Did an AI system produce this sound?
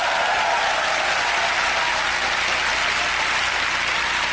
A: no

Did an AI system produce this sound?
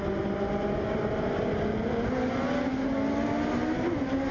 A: no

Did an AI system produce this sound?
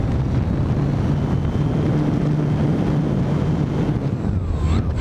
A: no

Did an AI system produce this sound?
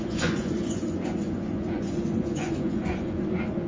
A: yes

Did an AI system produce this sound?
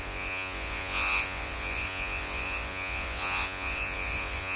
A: yes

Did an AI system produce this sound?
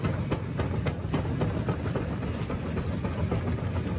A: no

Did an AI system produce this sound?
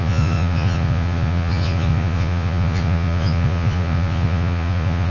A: yes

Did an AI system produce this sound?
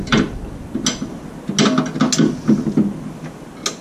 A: no